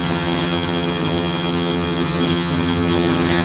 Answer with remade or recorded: remade